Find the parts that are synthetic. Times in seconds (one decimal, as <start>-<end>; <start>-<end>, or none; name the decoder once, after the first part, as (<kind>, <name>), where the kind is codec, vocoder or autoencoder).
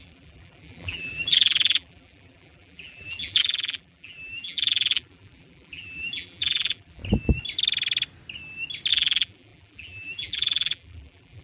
0.0-7.0 (vocoder, BigVGAN v2); 8.9-11.4